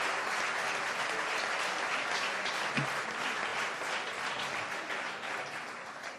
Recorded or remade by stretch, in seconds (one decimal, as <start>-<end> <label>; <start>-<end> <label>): 0.0-3.5 recorded; 3.5-5.5 remade; 5.5-6.2 recorded